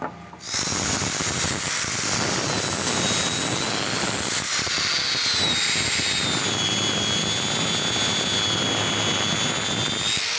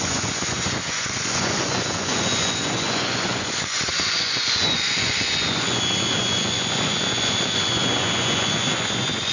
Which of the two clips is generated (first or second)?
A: second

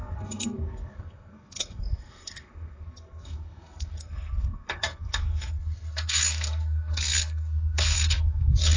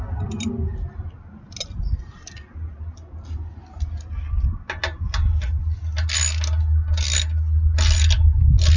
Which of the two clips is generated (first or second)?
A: first